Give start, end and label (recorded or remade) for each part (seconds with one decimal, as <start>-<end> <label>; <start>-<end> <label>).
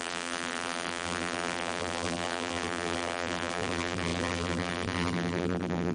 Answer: 0.0-5.9 remade